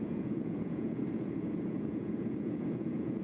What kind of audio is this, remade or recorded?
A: remade